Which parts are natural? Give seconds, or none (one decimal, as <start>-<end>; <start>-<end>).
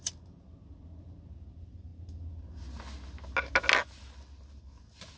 0.0-5.2